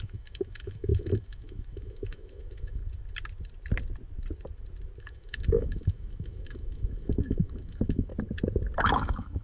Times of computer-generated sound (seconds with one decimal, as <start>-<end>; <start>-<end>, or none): 0.0-2.8; 5.0-8.1; 8.8-9.4